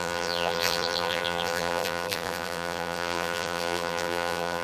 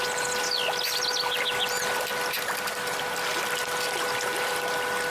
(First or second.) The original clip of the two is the second